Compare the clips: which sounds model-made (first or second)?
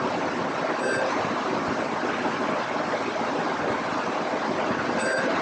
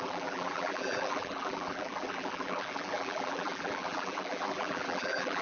second